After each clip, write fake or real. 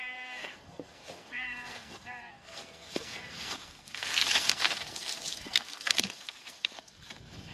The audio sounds fake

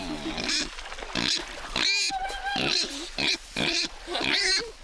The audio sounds real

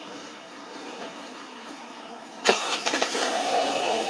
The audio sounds fake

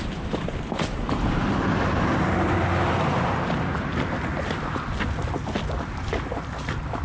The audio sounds real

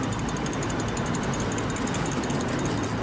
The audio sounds real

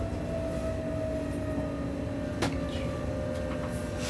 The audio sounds real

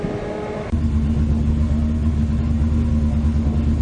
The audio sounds real